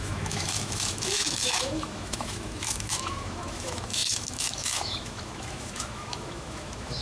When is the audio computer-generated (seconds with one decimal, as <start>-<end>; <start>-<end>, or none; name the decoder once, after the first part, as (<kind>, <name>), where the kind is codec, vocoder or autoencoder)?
0.0-7.0 (autoencoder, DAC-VAE)